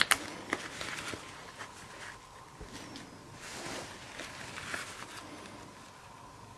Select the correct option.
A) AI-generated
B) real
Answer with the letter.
B